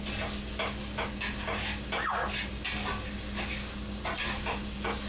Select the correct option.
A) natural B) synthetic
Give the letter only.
A